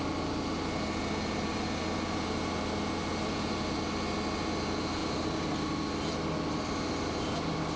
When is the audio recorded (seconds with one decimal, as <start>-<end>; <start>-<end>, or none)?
0.0-7.8